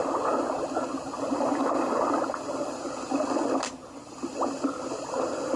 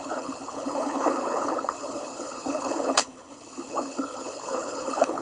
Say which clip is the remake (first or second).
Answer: second